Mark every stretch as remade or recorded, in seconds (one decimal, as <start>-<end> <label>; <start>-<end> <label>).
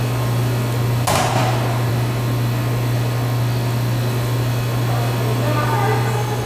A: 0.0-6.5 recorded